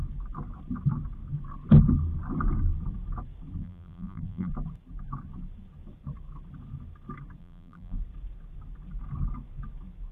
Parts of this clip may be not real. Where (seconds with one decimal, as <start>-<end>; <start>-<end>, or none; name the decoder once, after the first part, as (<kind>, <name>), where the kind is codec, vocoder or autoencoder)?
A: 3.6-4.5 (vocoder, BigVGAN v2); 7.4-8.0